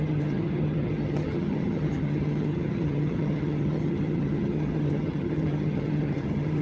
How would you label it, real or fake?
fake